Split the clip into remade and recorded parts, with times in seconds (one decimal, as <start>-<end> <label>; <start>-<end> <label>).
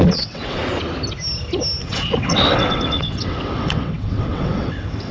0.0-0.6 remade; 0.6-1.8 recorded; 1.8-5.1 remade